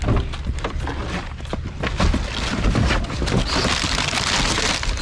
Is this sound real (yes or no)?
yes